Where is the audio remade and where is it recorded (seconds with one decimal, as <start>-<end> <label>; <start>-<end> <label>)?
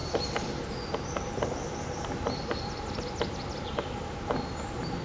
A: 0.0-5.0 recorded